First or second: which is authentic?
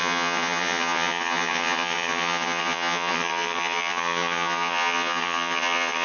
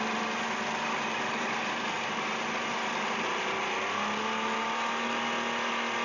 second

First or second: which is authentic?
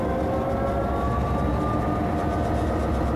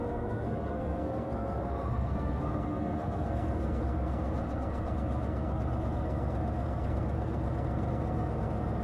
first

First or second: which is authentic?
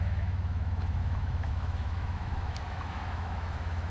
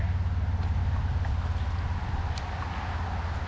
second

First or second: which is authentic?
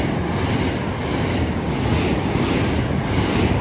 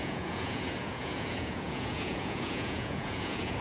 first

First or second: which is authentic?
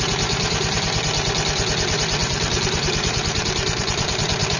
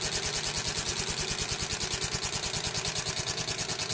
second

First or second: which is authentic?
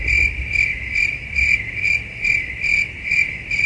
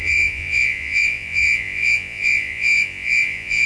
first